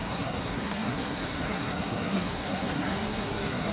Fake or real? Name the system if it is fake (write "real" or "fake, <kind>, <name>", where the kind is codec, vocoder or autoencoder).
fake, codec, SNAC